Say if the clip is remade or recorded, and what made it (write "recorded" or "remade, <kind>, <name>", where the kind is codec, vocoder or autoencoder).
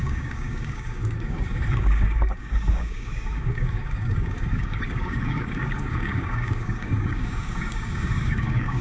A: remade, codec, DAC